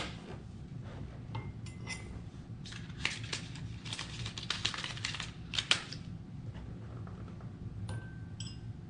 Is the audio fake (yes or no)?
no